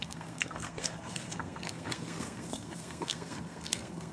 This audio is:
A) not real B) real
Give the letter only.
A